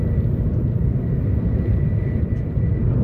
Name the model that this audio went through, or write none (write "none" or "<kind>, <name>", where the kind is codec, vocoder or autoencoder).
none